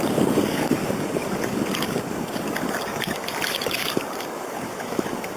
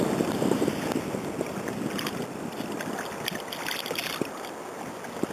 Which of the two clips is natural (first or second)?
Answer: second